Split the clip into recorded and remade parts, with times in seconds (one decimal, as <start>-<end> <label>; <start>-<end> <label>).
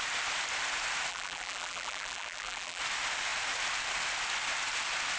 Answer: 0.0-1.1 recorded; 1.1-2.8 remade; 2.8-5.2 recorded